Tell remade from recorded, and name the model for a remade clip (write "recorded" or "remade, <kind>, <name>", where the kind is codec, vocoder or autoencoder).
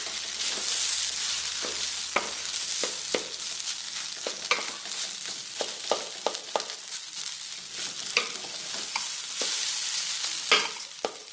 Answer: recorded